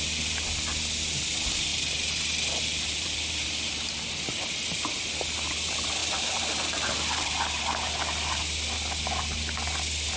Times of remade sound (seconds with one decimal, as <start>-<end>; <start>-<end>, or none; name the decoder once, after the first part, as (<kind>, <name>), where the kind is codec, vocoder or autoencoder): 1.7-3.8 (vocoder, BigVGAN v2); 6.0-7.6